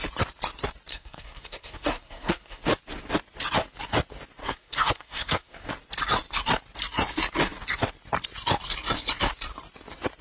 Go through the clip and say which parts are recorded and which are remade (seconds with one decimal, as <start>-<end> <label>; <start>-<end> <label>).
0.0-0.9 recorded; 0.9-2.6 remade; 2.6-4.4 recorded; 4.4-5.7 remade; 5.7-10.2 recorded